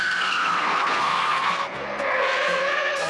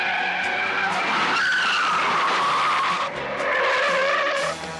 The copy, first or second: first